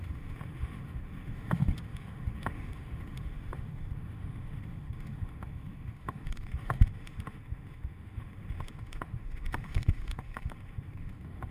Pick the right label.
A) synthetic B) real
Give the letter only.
A